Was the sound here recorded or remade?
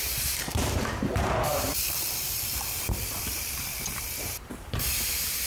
remade